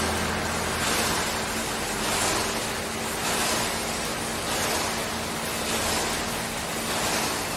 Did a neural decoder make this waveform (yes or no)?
no